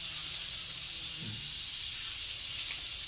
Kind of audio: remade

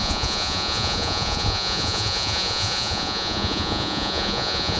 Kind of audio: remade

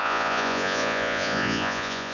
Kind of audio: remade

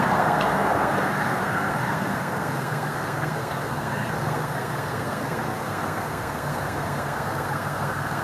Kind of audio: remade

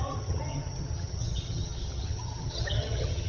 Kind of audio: remade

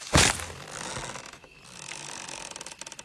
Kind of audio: recorded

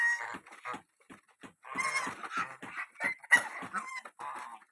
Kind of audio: recorded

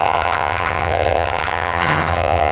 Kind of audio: remade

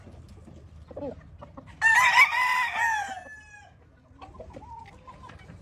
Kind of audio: recorded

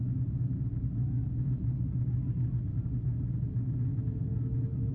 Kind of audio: recorded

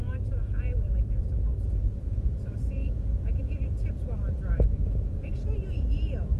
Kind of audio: remade